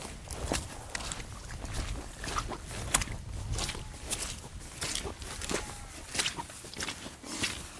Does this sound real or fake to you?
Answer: real